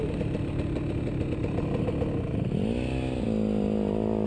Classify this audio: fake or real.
real